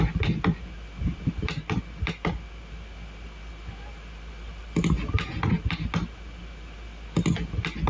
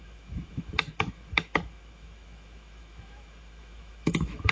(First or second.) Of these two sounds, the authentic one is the first